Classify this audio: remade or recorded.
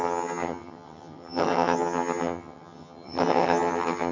remade